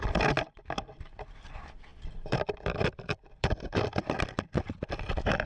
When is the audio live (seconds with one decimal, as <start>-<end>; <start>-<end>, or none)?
0.0-1.9